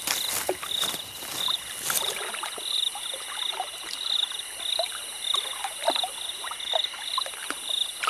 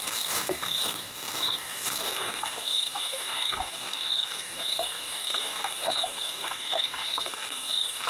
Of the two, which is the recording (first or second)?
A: first